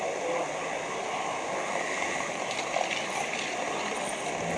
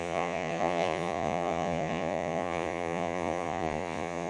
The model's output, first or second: second